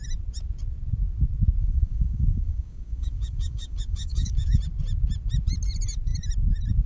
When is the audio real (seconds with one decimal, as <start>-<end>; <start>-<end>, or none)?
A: 0.0-1.6; 4.6-6.9